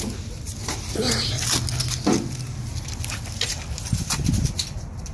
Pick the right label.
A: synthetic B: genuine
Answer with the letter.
B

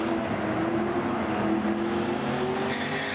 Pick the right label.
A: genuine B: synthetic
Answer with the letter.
A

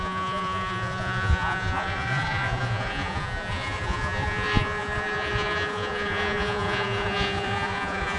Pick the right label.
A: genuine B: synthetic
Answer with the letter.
B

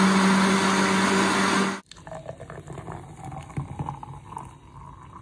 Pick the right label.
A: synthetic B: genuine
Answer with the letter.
B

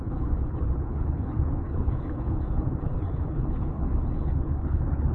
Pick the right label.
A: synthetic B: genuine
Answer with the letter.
A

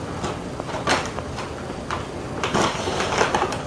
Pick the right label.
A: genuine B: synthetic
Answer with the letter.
A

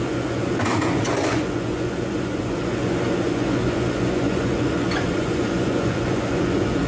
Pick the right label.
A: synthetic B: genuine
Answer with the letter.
A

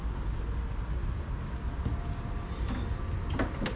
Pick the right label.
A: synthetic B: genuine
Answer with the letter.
B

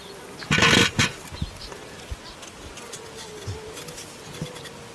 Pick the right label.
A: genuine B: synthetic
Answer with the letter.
A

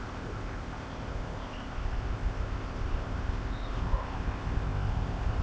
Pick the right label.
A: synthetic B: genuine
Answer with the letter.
A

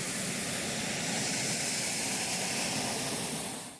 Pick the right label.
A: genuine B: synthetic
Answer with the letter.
A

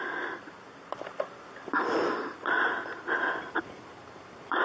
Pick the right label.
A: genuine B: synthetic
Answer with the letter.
A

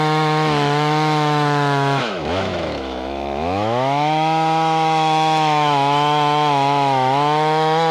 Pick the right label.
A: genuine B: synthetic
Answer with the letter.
B